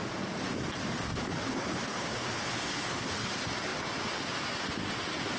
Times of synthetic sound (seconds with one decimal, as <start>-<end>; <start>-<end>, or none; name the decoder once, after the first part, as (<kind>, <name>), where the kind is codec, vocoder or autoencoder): 1.3-3.3 (codec, HILCodec)